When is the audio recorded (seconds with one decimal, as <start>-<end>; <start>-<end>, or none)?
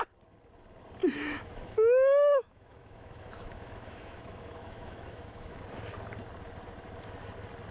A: 0.0-1.0; 5.6-7.7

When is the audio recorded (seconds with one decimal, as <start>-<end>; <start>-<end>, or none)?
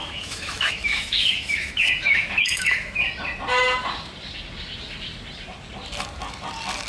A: 3.1-6.9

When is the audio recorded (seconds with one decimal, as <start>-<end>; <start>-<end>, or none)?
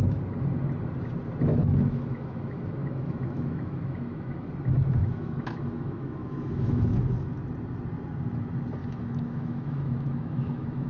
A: 0.0-1.5; 4.5-5.0; 7.0-8.8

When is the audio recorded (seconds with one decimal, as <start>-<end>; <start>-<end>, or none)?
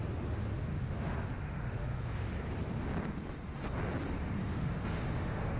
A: 0.0-0.7; 2.3-4.4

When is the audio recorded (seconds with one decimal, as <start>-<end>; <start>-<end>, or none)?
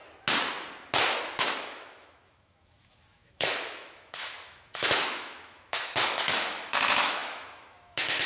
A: 0.0-1.6